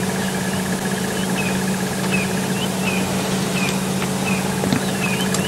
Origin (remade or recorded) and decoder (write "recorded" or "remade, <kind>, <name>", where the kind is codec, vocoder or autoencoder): recorded